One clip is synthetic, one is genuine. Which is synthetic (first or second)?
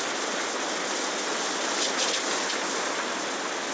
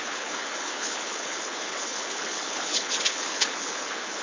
second